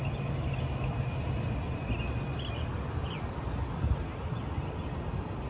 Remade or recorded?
recorded